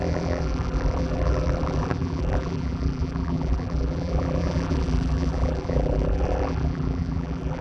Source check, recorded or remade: remade